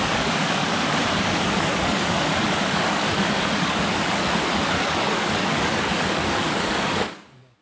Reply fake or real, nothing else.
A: fake